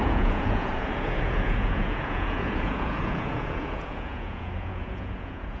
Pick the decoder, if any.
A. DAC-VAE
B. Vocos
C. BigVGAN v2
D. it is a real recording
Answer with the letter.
B